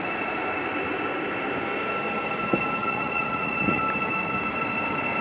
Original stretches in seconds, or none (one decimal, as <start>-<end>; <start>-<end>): 0.0-2.8; 3.8-5.2